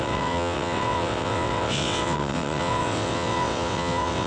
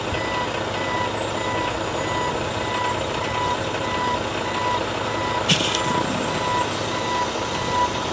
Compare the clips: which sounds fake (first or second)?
first